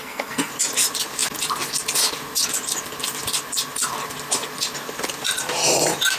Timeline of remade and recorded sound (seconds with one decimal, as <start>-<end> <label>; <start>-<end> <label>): 0.0-0.5 remade; 0.5-6.2 recorded